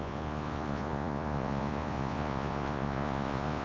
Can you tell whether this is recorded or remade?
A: remade